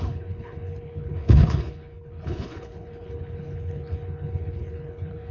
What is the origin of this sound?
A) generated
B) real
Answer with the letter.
A